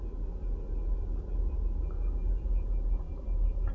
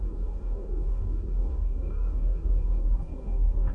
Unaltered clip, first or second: first